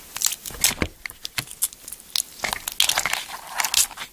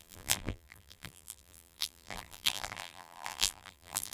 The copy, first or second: second